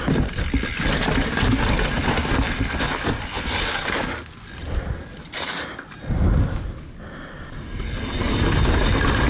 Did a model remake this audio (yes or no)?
no